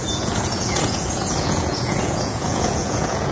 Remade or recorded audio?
remade